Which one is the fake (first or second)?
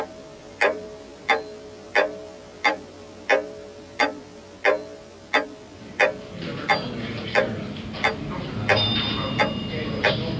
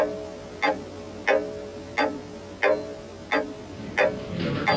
first